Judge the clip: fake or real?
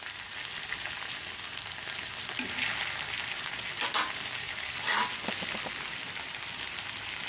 real